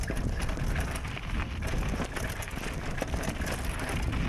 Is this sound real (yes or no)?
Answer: yes